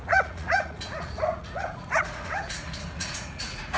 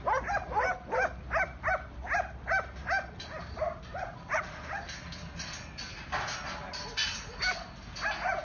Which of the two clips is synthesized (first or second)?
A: first